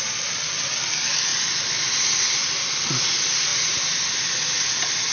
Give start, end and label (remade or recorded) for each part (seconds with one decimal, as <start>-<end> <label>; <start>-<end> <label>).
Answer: 0.0-5.1 recorded